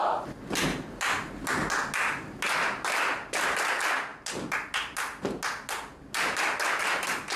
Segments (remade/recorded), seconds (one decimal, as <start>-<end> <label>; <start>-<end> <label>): 0.0-7.4 recorded